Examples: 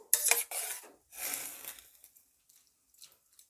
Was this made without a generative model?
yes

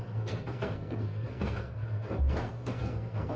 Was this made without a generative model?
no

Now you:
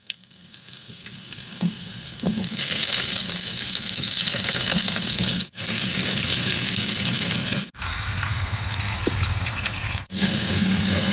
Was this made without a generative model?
no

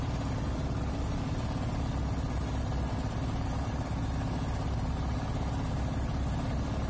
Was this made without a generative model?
yes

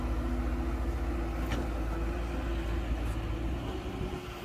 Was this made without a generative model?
yes